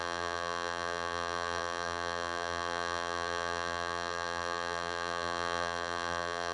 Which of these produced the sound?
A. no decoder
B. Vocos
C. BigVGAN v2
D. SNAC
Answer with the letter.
C